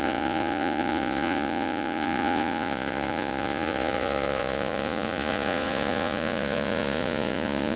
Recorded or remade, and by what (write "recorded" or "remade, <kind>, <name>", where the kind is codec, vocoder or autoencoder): remade, vocoder, Vocos